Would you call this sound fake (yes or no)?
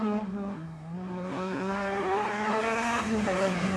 yes